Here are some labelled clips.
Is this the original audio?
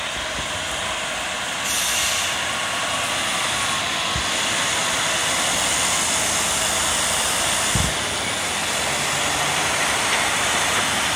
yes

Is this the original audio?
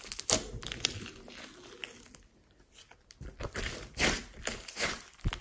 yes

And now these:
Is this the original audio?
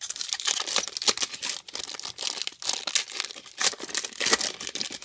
yes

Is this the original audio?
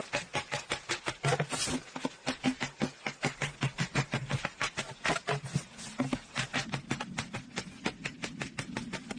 yes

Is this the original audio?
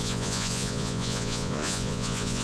no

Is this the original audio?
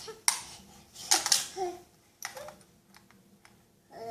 yes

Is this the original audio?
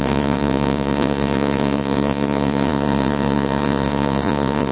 no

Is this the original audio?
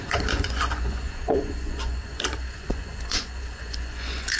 no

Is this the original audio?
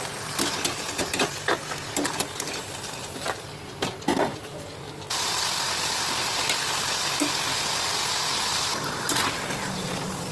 yes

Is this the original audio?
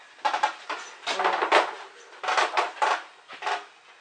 yes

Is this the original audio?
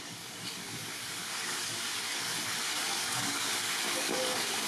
no